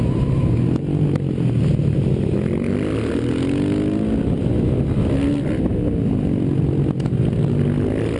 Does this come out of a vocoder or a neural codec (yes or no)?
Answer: no